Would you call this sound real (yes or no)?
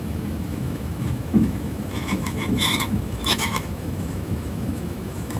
no